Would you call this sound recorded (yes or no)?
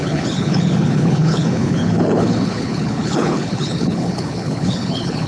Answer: no